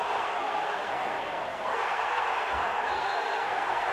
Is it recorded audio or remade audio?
remade